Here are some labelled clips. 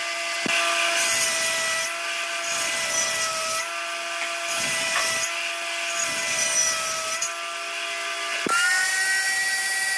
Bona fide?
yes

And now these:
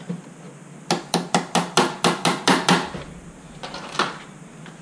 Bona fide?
yes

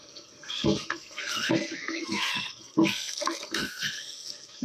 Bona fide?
no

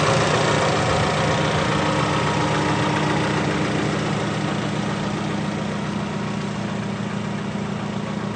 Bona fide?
yes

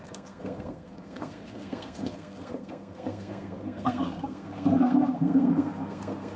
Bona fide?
no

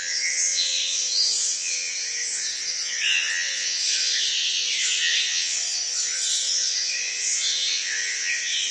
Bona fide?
no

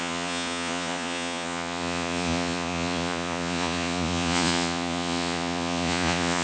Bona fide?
no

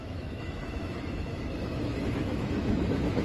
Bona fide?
no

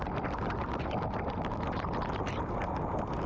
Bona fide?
yes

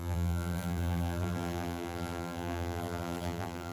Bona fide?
no